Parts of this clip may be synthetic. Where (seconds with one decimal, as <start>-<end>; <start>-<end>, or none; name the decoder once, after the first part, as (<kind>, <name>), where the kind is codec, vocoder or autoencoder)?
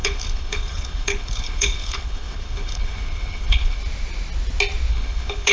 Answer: 0.0-3.8 (codec, HILCodec); 4.9-5.5